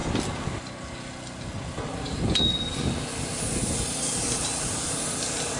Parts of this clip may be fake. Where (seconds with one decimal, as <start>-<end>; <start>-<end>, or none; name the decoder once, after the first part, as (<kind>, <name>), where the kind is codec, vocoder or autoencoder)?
3.4-5.6 (vocoder, BigVGAN v2)